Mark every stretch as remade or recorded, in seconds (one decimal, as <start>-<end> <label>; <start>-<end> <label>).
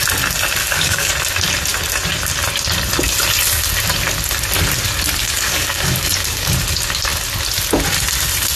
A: 0.0-0.6 recorded; 0.6-1.1 remade; 1.1-5.2 recorded; 5.2-6.5 remade; 6.5-8.6 recorded